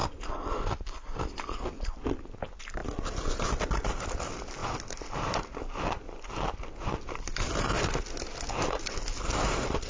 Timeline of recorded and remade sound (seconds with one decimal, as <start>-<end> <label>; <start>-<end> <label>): 0.0-4.6 remade; 4.6-9.2 recorded; 9.2-9.9 remade